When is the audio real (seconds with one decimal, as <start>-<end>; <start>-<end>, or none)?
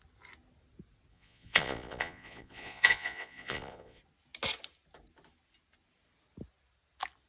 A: 0.0-1.1; 4.0-7.3